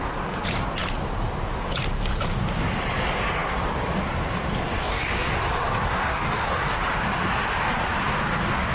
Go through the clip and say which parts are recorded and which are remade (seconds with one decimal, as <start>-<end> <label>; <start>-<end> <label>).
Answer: 0.0-4.8 recorded; 4.8-5.3 remade; 5.3-6.0 recorded; 6.0-6.6 remade; 6.6-8.7 recorded